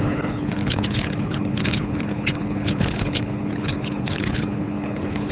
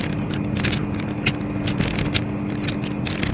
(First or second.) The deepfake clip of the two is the first